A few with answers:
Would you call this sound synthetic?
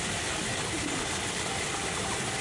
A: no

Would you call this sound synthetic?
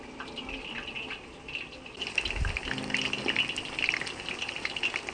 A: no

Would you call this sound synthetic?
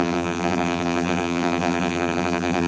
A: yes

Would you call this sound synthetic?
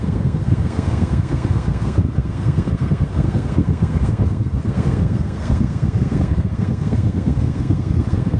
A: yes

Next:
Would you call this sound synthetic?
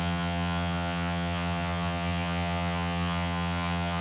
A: yes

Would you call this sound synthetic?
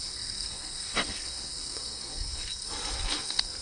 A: yes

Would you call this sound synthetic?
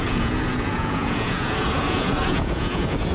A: yes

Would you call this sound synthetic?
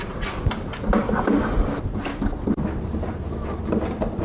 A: no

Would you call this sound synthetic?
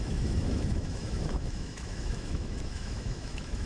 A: yes